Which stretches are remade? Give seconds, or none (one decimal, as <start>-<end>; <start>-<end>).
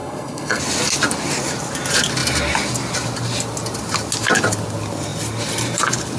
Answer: 0.0-0.6